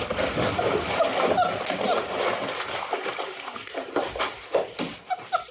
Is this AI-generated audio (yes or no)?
no